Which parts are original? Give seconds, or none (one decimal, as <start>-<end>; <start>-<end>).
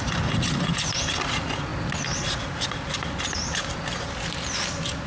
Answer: 0.0-5.1